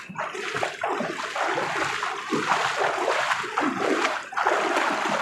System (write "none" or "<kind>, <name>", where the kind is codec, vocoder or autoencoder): none